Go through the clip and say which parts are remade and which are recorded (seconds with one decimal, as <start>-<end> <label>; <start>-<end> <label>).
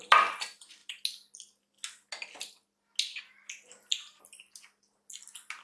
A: 0.0-5.6 recorded